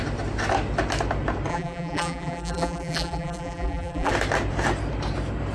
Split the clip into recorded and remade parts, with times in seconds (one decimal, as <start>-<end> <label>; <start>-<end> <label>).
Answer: 0.0-1.5 recorded; 1.5-4.1 remade; 4.1-5.5 recorded